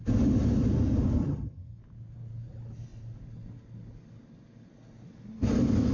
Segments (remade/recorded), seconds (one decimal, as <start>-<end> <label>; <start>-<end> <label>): 0.0-1.2 recorded; 1.2-1.8 remade; 1.8-5.9 recorded